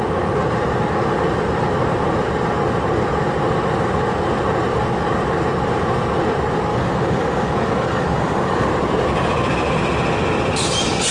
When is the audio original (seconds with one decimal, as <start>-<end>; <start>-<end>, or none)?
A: 0.0-6.7; 8.7-11.1